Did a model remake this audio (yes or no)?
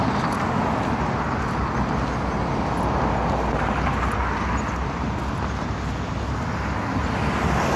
no